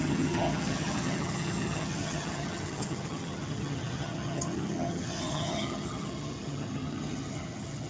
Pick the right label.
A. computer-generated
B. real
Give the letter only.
A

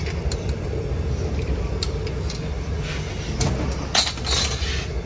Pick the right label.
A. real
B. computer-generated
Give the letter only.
A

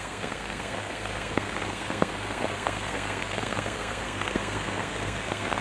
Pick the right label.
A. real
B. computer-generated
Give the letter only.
B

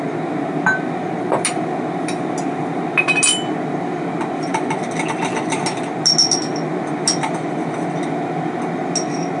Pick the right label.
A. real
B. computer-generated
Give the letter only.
A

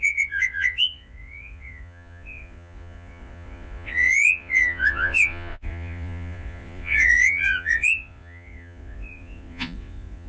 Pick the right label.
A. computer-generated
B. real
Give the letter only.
A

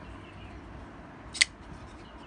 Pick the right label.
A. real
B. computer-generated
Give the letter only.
A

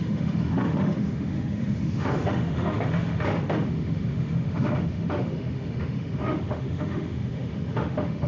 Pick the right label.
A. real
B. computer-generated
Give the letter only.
B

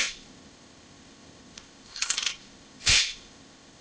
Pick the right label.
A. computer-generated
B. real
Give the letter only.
A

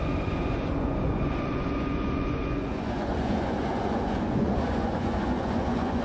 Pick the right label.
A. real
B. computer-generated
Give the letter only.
B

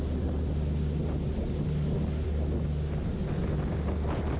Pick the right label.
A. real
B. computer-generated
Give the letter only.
A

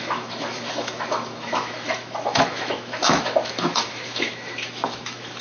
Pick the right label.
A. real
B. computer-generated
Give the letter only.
B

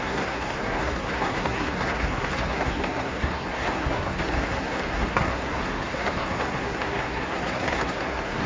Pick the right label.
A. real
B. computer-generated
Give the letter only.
B